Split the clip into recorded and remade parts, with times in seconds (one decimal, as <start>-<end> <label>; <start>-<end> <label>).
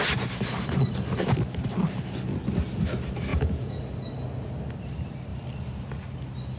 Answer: 0.0-3.3 recorded; 3.3-3.8 remade; 3.8-6.6 recorded